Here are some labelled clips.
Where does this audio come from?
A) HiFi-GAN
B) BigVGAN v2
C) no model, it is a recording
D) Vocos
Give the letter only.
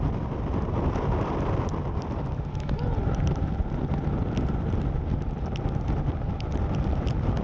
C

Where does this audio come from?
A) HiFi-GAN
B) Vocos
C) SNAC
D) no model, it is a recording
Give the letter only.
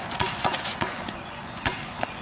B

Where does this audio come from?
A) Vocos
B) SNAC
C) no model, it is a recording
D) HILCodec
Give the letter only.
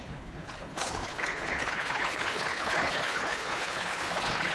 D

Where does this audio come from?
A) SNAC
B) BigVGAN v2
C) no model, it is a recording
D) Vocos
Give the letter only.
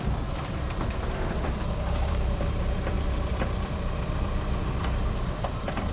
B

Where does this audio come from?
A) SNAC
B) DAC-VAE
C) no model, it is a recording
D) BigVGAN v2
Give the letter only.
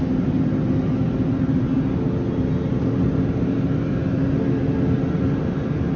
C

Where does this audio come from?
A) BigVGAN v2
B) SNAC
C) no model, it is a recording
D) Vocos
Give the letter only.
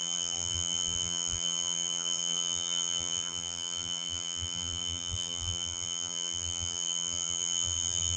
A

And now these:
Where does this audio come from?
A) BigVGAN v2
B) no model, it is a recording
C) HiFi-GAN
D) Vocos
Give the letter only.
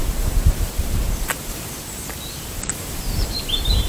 A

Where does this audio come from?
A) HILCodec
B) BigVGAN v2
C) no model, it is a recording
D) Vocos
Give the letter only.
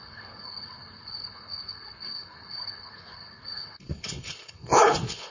A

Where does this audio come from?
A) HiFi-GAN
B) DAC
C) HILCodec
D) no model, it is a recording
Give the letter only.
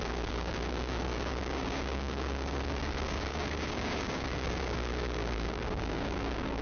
B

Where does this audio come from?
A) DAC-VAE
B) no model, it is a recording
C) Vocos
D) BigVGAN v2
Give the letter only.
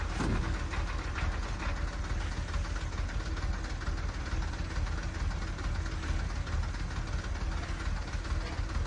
B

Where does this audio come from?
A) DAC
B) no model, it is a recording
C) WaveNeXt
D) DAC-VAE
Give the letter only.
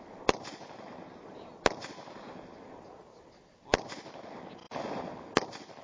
B